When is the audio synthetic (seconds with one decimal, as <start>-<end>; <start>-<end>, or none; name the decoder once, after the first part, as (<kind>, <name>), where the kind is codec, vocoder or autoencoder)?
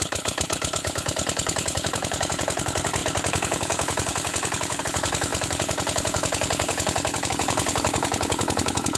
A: 0.0-9.0 (codec, HILCodec)